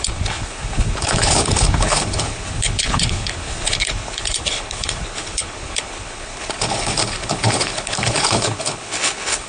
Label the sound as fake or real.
fake